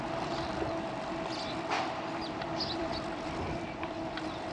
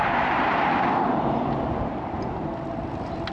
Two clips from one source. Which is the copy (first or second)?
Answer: first